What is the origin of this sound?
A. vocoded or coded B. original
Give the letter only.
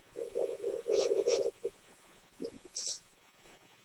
A